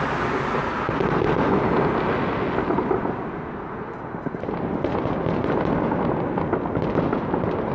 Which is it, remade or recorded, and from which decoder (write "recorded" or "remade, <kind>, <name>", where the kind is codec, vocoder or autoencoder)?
recorded